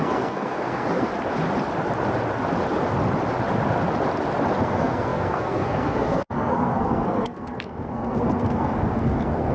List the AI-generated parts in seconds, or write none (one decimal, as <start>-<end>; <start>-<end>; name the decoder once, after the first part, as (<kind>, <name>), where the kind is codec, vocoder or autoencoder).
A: 0.0-1.1 (codec, SNAC); 4.6-9.5